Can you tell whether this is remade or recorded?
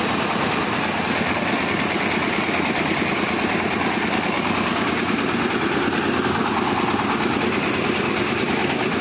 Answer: recorded